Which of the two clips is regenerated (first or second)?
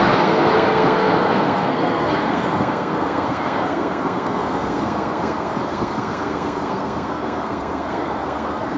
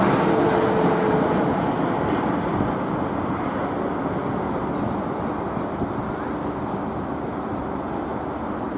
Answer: first